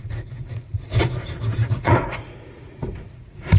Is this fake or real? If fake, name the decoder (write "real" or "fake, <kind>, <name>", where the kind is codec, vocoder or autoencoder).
fake, vocoder, Vocos